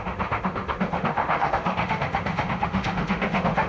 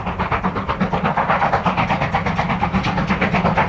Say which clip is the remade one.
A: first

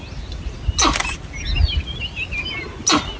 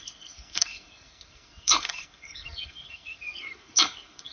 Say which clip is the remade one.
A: second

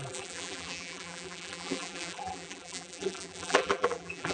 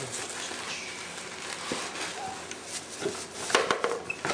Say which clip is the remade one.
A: first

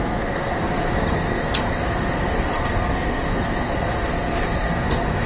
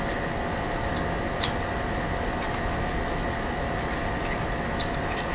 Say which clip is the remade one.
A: first